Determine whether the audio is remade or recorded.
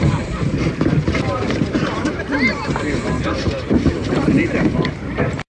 remade